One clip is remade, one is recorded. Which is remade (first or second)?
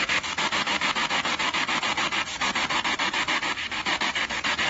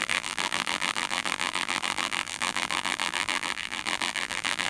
second